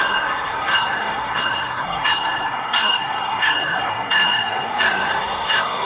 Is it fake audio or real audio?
fake